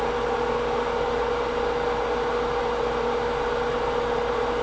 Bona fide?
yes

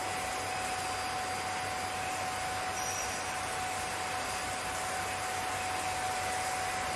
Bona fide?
yes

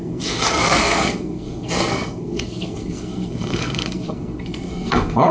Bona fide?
no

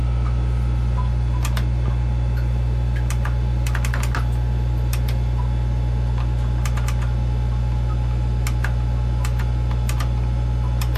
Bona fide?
yes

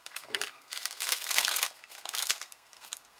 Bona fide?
no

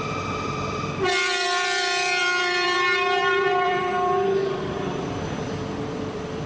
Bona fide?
no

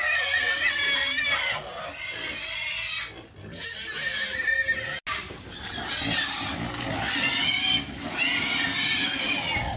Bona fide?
yes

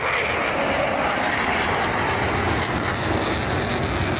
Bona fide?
yes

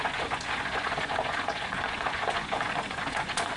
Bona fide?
no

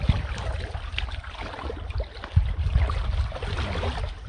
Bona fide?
yes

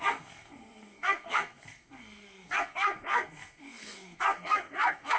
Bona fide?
no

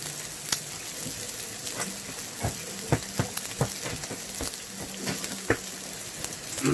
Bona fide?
yes